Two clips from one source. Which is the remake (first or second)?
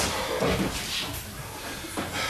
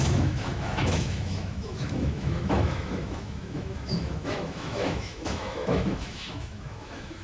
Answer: second